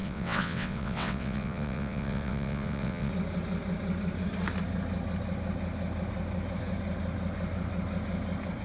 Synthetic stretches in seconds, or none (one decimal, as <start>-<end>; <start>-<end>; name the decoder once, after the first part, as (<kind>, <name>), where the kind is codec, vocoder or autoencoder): 0.0-3.1 (vocoder, WaveNeXt)